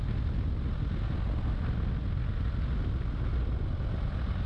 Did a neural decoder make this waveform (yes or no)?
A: no